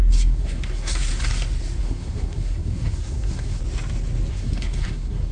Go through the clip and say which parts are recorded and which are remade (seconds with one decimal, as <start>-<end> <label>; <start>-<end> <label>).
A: 0.0-1.1 remade; 1.1-1.8 recorded; 1.8-3.6 remade; 3.6-4.3 recorded; 4.3-5.3 remade

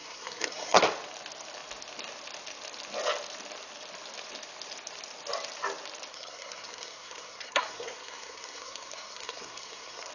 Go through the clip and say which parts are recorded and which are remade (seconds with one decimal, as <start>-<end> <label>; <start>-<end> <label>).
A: 0.0-0.8 remade; 0.8-6.1 recorded; 6.1-10.1 remade

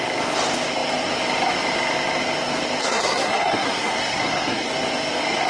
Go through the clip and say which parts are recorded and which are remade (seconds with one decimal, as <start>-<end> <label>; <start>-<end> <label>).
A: 0.0-2.8 recorded; 2.8-4.7 remade; 4.7-5.5 recorded